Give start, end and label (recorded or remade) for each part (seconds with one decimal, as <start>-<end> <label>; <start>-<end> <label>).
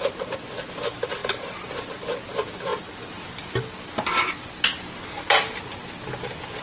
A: 0.0-6.6 recorded